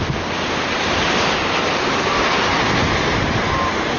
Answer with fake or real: real